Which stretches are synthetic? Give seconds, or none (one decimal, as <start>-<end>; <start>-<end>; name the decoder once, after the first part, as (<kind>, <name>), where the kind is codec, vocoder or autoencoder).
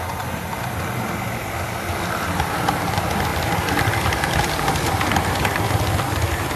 3.3-4.9 (vocoder, BigVGAN v2)